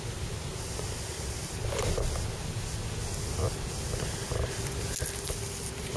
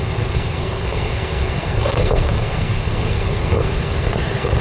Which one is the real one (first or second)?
first